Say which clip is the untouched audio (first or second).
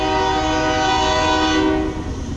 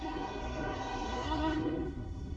first